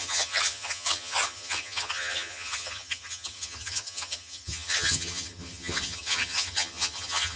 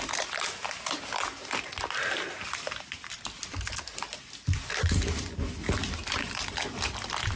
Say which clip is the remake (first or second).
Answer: first